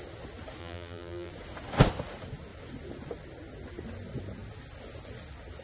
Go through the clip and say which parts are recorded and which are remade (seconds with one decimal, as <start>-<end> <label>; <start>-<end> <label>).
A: 0.0-0.6 recorded; 0.6-1.3 remade; 1.3-5.6 recorded